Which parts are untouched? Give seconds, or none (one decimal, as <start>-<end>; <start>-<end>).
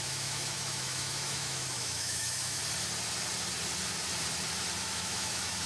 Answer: 2.6-4.8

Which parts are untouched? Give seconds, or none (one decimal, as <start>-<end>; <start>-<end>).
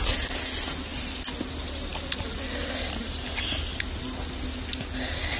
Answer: 0.0-5.4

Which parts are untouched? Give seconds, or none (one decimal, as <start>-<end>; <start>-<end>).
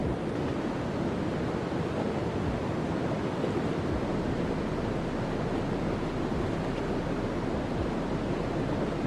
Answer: 0.0-9.1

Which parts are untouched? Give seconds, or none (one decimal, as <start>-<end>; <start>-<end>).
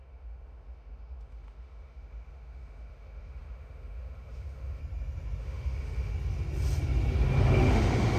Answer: 4.8-5.4; 6.1-7.4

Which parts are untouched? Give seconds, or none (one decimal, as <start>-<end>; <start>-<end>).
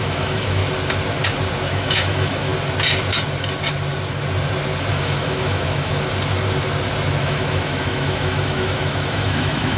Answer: 0.6-1.7; 2.5-4.9; 5.9-7.2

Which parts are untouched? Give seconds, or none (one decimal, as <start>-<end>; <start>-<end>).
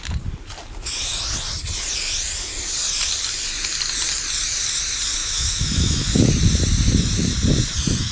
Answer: 0.0-5.2; 6.3-8.1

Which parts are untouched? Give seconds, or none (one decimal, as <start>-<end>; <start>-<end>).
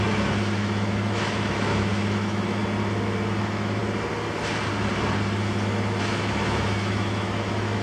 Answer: 2.6-3.4; 3.8-6.0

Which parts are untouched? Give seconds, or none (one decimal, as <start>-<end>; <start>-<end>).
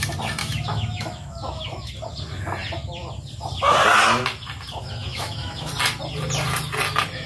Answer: 0.0-0.4; 1.9-5.0; 5.7-7.3